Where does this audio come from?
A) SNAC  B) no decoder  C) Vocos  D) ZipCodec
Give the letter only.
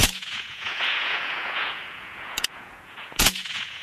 C